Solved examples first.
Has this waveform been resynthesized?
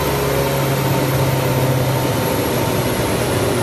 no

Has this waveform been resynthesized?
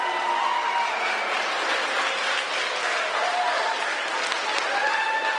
no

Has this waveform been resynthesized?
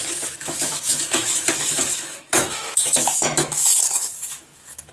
yes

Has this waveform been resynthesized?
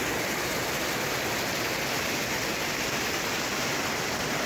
no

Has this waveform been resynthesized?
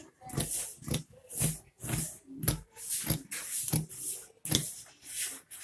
no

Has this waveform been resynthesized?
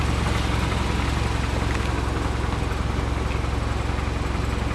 no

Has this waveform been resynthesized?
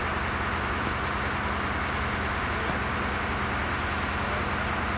no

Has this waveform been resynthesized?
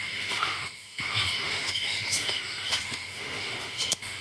yes